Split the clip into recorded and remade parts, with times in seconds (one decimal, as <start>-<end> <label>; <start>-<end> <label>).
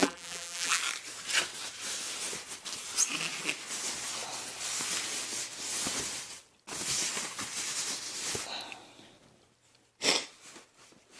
0.0-0.8 remade; 0.8-11.2 recorded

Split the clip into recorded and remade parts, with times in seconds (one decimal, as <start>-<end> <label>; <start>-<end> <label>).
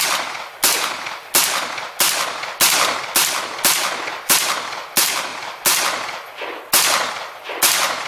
0.0-8.1 recorded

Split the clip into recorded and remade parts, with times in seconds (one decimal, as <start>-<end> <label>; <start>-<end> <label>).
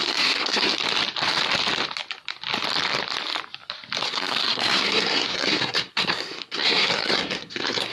0.0-0.7 remade; 0.7-4.0 recorded; 4.0-7.9 remade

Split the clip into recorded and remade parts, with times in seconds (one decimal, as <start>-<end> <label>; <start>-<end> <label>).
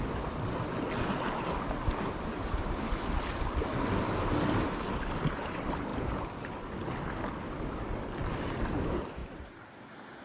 0.0-10.2 recorded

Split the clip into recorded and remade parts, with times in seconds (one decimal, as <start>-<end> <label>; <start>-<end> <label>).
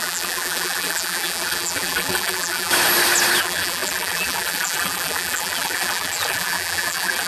0.0-2.7 remade; 2.7-3.4 recorded; 3.4-7.3 remade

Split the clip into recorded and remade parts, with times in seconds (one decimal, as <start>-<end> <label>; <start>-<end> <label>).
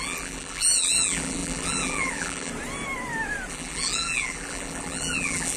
0.0-2.5 remade; 2.5-3.5 recorded; 3.5-5.6 remade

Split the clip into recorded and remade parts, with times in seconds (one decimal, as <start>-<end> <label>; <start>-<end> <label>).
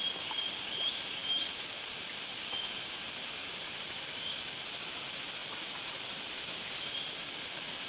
0.0-7.9 recorded